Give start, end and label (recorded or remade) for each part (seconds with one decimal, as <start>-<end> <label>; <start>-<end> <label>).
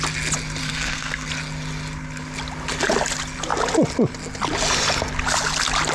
0.0-0.6 recorded; 0.6-1.3 remade; 1.3-5.9 recorded